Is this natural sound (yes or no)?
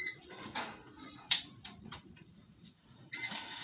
no